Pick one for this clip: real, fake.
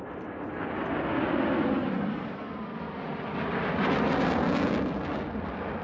real